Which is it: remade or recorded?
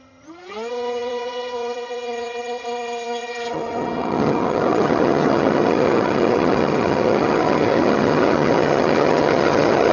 remade